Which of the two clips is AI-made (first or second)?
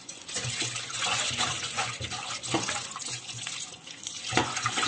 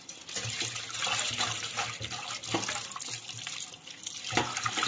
first